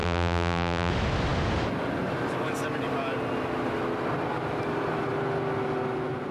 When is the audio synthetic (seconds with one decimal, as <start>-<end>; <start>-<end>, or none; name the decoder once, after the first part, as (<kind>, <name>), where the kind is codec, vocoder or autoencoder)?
0.0-0.9 (vocoder, BigVGAN v2)